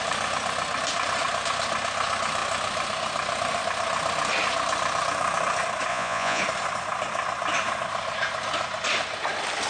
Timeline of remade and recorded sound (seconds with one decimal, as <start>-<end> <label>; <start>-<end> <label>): 0.0-5.9 recorded; 5.9-6.4 remade; 6.4-9.7 recorded